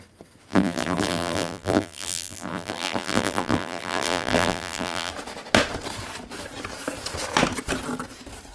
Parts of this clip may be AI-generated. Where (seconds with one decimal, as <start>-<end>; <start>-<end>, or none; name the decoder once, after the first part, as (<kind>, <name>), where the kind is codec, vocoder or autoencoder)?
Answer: 0.5-5.1 (vocoder, BigVGAN v2)